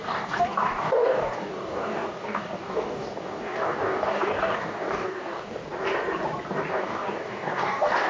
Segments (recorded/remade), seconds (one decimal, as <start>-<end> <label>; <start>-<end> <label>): 0.0-5.6 remade; 5.6-6.7 recorded; 6.7-8.1 remade